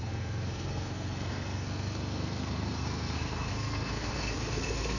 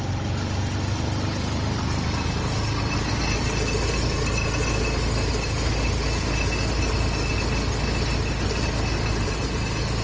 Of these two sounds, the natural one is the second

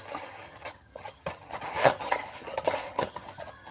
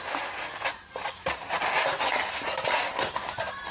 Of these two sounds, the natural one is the second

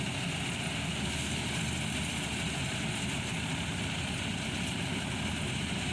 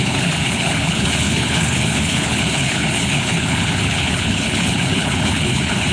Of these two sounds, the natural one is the first